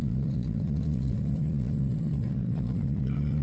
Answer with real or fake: fake